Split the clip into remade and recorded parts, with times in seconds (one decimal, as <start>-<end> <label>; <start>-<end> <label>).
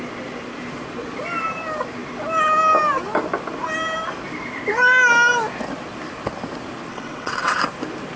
0.0-6.9 recorded; 6.9-7.6 remade; 7.6-8.2 recorded